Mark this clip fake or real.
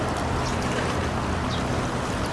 real